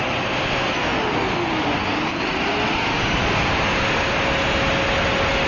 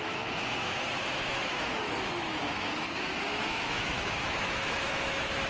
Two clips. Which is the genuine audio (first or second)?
first